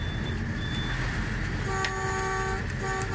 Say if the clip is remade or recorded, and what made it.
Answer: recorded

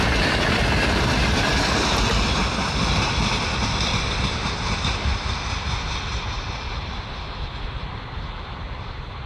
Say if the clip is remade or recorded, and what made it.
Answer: recorded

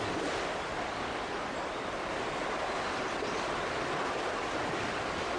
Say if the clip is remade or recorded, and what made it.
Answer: recorded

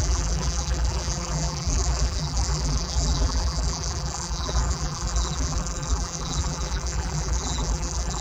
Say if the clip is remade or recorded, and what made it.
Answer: remade, vocoder, BigVGAN v2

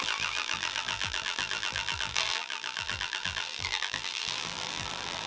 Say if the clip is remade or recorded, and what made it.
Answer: remade, vocoder, BigVGAN v2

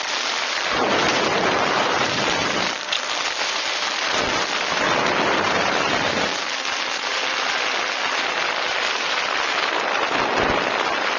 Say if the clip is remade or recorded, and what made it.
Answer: recorded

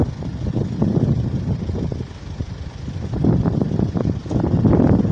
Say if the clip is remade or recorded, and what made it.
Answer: recorded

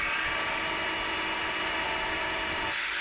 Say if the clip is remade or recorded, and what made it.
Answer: recorded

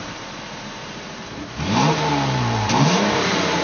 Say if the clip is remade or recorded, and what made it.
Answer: remade, vocoder, BigVGAN v2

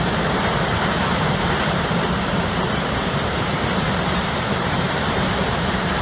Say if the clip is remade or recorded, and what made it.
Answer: remade, vocoder, BigVGAN v2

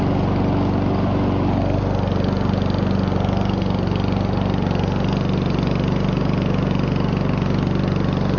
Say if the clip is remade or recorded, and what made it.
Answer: recorded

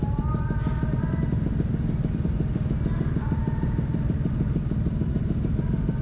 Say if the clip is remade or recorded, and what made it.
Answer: recorded